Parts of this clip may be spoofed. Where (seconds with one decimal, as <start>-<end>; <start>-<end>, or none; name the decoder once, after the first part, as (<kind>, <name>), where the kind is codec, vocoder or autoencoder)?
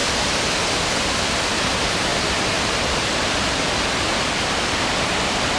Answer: none